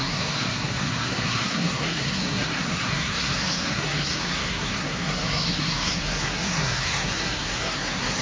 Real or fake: fake